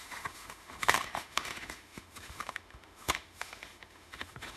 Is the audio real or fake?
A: fake